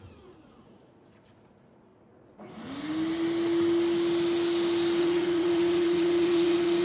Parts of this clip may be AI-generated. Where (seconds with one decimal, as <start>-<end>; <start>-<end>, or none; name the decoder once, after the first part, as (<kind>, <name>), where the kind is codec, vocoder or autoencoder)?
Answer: 0.0-1.9 (vocoder, Vocos); 5.0-6.8